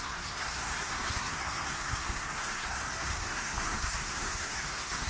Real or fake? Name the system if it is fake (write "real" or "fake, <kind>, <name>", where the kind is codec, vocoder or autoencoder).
fake, codec, SNAC